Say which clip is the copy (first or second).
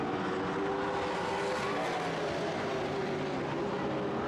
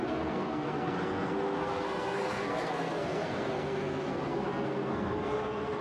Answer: second